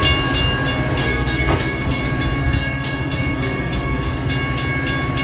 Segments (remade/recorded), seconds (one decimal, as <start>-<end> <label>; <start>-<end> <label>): 0.0-1.0 recorded; 1.0-2.0 remade; 2.0-2.4 recorded; 2.4-4.3 remade; 4.3-5.2 recorded